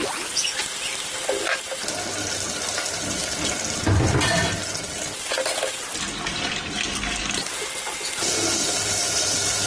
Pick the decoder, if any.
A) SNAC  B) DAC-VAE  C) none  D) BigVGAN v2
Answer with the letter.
C